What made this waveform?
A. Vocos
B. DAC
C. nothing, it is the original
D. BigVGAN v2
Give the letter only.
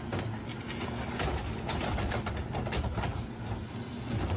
C